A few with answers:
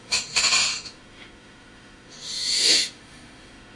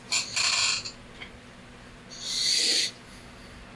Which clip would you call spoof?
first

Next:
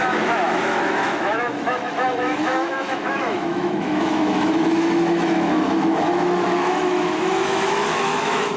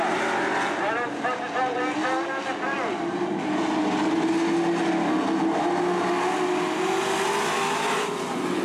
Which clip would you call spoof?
first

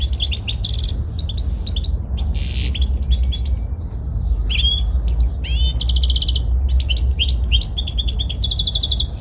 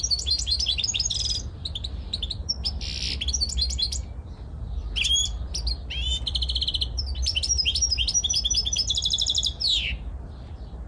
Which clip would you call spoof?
second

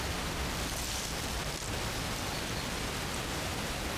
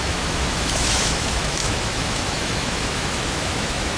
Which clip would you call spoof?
second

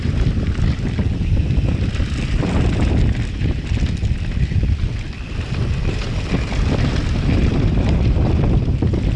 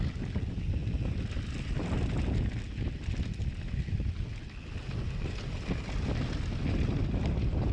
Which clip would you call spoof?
first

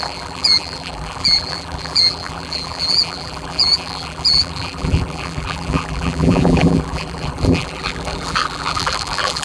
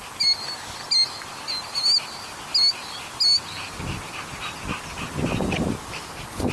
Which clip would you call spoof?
first